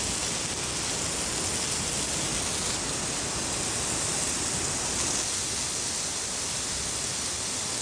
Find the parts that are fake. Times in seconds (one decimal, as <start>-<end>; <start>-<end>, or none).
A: none